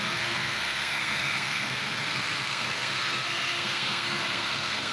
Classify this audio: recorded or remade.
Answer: remade